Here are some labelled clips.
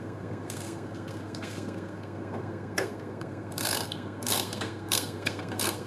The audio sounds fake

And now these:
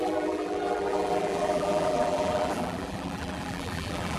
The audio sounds fake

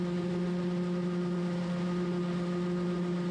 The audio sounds real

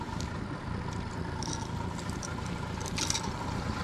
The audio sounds fake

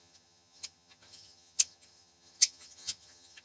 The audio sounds fake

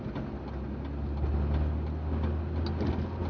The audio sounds real